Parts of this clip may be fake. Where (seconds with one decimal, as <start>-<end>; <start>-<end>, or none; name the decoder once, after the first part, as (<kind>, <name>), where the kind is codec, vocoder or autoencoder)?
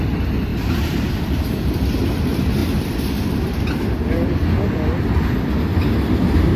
0.5-1.2 (vocoder, BigVGAN v2); 2.6-3.8